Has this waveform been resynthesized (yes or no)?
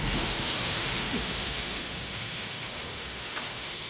yes